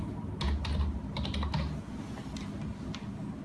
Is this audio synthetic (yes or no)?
no